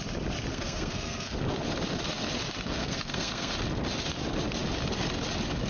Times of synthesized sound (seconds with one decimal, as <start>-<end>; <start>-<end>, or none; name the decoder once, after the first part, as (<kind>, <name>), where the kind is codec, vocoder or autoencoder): 0.5-1.4 (codec, SNAC); 2.8-3.5